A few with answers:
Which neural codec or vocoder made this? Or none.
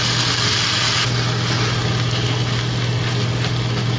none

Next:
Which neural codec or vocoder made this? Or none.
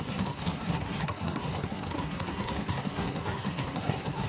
codec, SNAC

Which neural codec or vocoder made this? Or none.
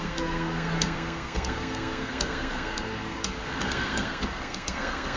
codec, SNAC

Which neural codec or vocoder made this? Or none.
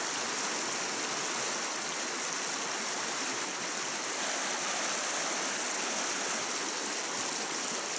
none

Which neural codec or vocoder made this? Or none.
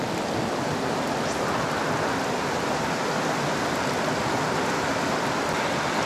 none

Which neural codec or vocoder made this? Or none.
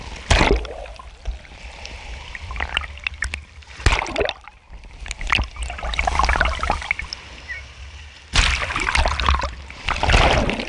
none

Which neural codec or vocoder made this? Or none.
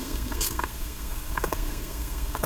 codec, SNAC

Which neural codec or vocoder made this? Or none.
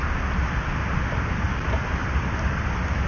none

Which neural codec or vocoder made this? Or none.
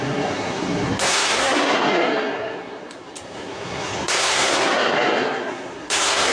codec, SNAC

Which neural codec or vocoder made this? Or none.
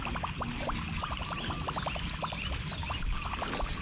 none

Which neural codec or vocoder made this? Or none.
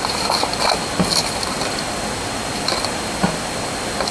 none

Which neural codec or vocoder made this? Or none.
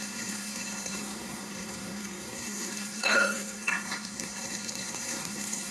codec, SNAC